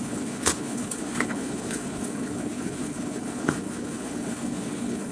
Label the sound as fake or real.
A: fake